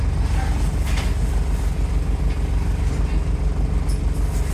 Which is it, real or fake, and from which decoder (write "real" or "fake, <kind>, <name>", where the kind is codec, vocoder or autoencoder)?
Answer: real